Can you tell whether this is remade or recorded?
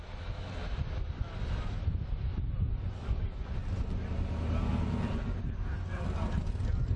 recorded